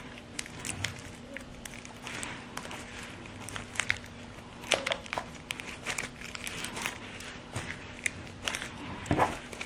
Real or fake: fake